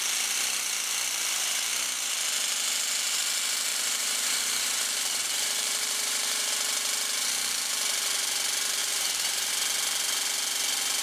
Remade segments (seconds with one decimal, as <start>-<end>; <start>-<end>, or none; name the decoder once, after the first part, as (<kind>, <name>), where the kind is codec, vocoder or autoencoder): 3.7-6.5 (vocoder, BigVGAN v2); 8.8-9.5